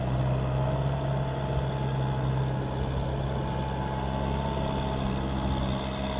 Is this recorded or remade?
recorded